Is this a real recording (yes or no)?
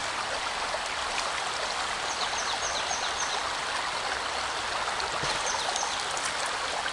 yes